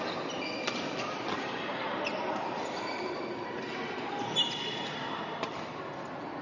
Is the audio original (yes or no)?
yes